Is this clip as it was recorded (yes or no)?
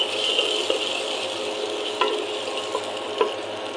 yes